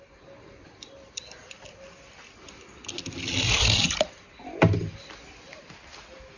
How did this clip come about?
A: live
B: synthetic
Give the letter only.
A